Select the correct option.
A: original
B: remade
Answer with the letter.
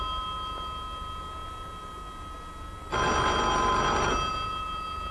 A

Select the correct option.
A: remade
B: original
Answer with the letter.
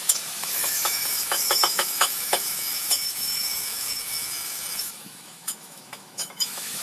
A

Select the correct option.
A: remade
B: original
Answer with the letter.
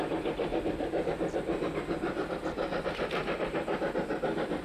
B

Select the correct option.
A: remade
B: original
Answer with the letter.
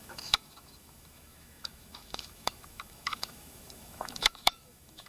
A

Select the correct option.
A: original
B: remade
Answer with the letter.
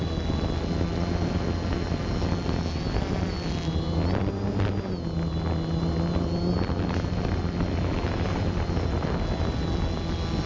A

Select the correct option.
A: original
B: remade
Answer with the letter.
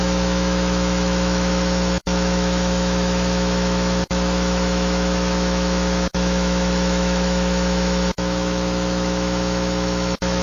B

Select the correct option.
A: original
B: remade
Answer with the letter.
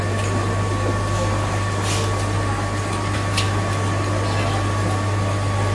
A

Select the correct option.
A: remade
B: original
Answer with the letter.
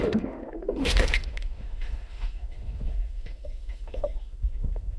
A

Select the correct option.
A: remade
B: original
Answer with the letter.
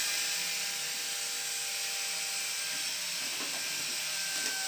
B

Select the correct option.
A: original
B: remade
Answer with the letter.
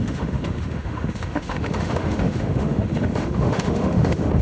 B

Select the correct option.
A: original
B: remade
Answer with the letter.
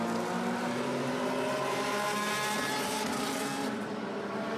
A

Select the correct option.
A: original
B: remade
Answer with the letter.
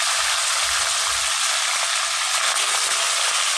A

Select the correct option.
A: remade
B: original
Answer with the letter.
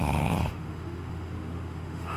A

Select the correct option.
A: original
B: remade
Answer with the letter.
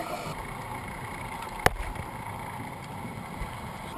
A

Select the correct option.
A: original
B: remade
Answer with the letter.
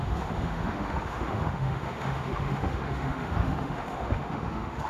B